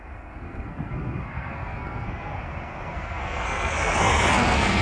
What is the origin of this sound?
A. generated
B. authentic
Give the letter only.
A